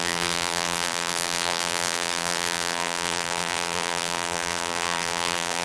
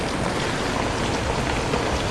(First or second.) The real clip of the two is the second